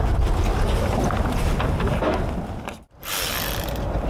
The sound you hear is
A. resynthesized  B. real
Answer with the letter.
B